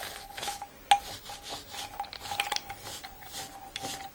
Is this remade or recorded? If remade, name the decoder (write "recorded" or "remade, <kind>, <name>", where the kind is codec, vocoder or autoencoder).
recorded